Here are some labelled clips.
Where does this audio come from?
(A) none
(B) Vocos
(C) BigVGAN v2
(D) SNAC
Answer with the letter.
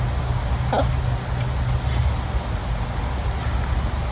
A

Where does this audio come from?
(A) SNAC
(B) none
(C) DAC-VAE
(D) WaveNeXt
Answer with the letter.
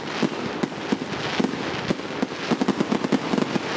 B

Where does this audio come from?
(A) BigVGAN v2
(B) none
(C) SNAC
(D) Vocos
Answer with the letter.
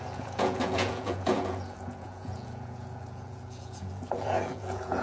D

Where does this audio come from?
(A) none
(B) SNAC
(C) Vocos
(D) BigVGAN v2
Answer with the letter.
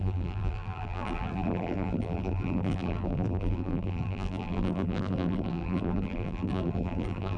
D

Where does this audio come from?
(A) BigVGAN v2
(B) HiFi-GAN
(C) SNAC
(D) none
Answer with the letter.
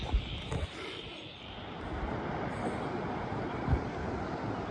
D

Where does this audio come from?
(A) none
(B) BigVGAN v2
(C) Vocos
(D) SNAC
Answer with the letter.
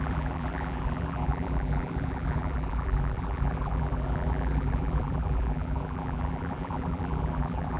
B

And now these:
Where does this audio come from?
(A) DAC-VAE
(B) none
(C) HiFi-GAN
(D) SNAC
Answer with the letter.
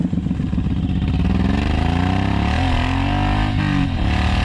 B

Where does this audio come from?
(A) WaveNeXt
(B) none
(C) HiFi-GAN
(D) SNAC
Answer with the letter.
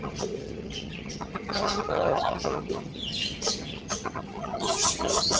C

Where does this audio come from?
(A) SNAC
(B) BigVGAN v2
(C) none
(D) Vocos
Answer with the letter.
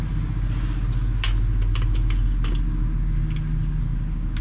C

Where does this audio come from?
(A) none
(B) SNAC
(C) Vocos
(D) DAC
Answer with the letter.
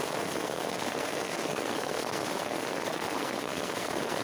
B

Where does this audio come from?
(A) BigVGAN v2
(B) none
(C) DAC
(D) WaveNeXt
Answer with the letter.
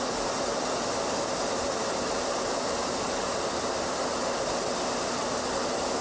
B